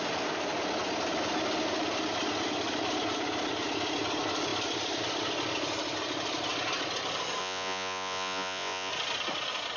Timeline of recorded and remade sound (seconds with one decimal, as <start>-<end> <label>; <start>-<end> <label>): 0.0-7.4 recorded; 7.4-8.9 remade; 8.9-9.8 recorded